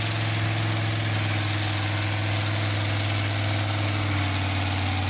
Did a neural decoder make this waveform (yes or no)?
no